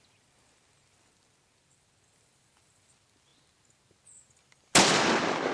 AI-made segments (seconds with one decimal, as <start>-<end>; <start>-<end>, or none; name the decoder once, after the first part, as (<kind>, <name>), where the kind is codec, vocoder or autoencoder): none